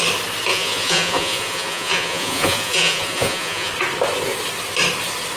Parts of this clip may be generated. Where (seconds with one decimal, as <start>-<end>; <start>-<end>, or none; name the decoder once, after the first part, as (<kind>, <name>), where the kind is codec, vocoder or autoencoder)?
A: 0.5-3.7 (vocoder, Vocos)